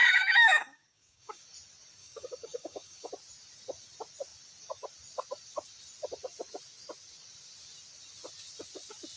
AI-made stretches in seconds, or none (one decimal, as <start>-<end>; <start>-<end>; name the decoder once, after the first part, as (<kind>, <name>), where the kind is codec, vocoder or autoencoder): 0.0-1.4 (codec, DAC); 2.0-3.1